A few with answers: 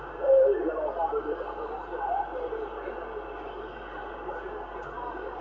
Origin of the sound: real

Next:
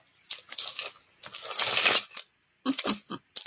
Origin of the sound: real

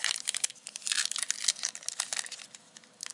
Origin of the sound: real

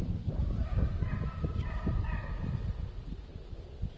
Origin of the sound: fake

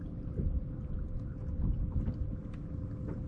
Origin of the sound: real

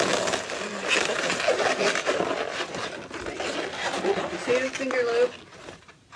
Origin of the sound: fake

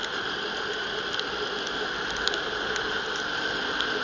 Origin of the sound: real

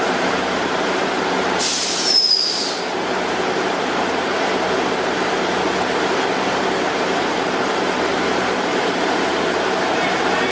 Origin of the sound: fake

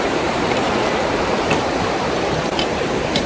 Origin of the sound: fake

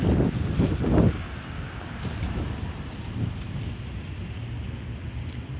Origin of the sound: real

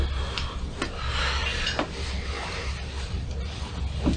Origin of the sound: real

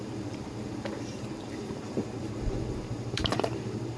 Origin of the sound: fake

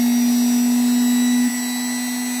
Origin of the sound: real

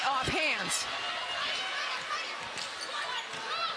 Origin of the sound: real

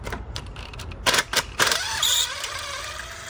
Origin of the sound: fake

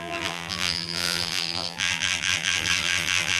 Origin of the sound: fake